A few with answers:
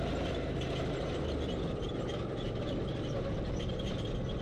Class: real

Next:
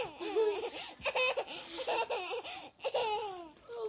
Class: real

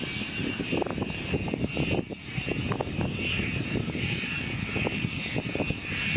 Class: real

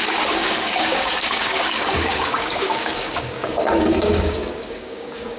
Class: fake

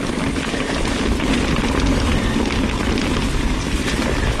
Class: real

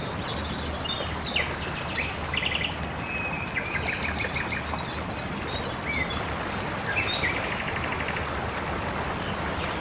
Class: real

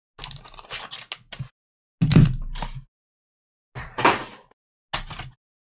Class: real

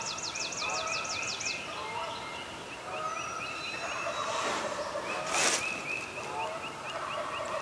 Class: real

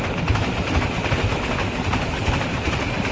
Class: real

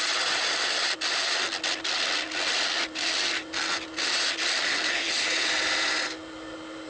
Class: real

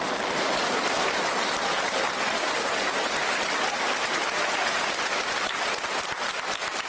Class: real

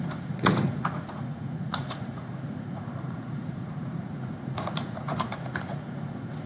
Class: fake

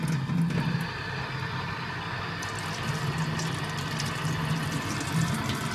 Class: real